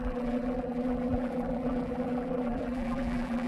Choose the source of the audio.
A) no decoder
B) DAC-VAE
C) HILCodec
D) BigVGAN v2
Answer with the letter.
D